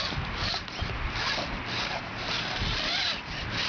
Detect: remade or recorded recorded